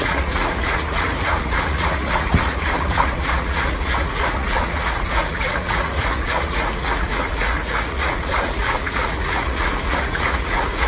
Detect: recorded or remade remade